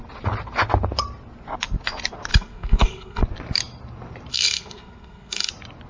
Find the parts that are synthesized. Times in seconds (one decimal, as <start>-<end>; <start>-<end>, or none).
2.3-3.2; 4.3-5.5